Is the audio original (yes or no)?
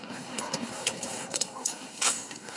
no